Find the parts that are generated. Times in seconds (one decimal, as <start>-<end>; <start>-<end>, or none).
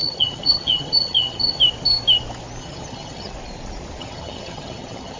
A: 0.0-1.6; 2.6-3.3; 4.0-5.2